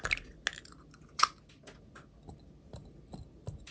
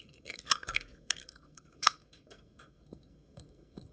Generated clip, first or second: second